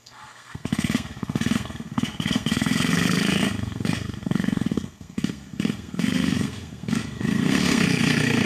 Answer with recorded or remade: remade